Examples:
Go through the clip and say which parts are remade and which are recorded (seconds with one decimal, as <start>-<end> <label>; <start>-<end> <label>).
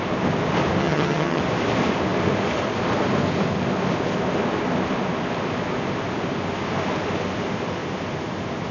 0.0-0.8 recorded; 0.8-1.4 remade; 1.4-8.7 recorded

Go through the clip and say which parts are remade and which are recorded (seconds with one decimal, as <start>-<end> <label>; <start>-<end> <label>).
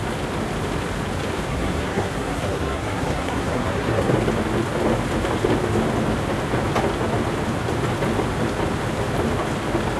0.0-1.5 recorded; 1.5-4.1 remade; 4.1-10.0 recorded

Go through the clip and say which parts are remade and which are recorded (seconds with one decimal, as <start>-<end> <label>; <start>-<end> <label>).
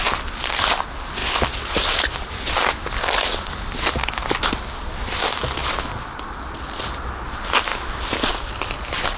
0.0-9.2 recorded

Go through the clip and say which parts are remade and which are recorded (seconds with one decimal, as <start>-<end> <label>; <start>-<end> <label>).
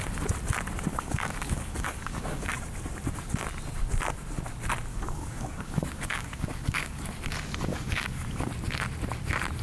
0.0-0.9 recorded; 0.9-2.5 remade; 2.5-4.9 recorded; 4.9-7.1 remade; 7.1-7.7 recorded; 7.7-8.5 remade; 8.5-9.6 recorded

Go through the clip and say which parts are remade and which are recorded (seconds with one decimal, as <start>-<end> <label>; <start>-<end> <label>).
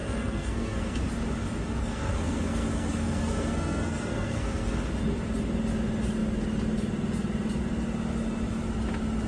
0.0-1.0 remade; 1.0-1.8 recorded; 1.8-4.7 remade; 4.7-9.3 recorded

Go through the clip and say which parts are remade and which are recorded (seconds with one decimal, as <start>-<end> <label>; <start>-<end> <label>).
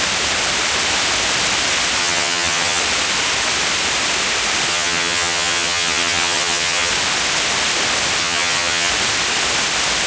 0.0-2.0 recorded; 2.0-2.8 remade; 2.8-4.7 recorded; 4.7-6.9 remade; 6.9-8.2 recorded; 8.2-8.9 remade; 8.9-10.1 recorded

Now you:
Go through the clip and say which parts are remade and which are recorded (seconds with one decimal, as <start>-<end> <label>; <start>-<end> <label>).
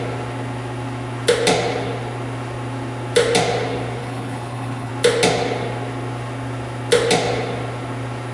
0.0-4.0 recorded; 4.0-4.9 remade; 4.9-8.3 recorded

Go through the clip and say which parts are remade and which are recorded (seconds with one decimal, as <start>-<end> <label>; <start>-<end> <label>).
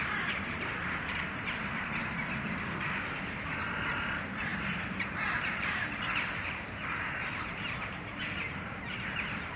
0.0-2.0 remade; 2.0-2.7 recorded; 2.7-9.6 remade